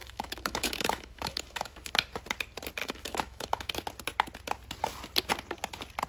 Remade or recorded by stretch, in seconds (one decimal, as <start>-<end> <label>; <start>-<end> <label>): 0.0-1.9 remade; 1.9-2.8 recorded; 2.8-3.7 remade; 3.7-6.1 recorded